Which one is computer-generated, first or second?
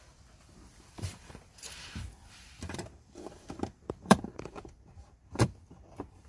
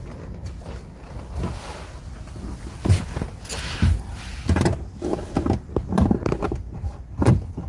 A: first